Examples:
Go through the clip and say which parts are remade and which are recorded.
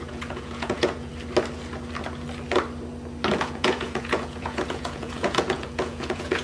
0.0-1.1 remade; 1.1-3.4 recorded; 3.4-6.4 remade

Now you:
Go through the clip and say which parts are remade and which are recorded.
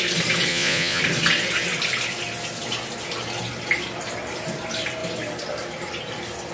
0.0-0.5 recorded; 0.5-1.0 remade; 1.0-6.5 recorded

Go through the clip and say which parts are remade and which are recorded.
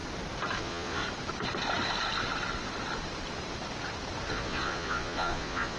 0.0-0.6 recorded; 0.6-1.0 remade; 1.0-4.3 recorded; 4.3-5.8 remade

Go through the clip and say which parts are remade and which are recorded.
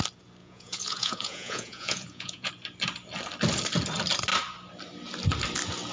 0.0-0.4 recorded; 0.4-2.5 remade; 2.5-5.9 recorded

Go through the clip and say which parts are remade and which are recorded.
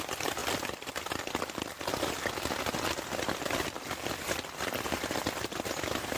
0.0-6.2 recorded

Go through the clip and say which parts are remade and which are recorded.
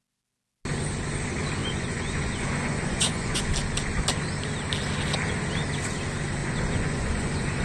0.0-1.6 recorded; 1.6-3.4 remade; 3.4-6.4 recorded; 6.4-7.6 remade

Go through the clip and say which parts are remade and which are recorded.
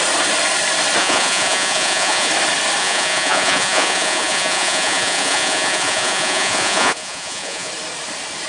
0.0-1.0 recorded; 1.0-2.3 remade; 2.3-2.8 recorded; 2.8-7.7 remade; 7.7-8.5 recorded